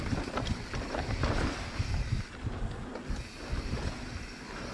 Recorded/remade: recorded